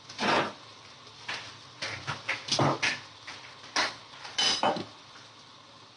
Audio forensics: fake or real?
real